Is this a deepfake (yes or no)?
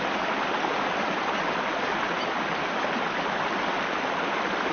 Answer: yes